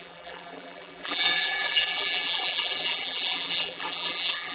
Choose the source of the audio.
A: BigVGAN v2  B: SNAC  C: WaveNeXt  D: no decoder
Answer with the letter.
A